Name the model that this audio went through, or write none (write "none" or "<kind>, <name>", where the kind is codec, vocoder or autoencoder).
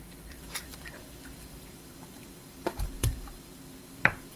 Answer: vocoder, BigVGAN v2